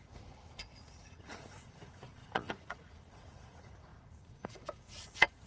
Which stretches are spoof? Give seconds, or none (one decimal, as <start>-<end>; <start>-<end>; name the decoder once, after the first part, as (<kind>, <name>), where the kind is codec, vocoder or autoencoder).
0.0-5.5 (vocoder, Vocos)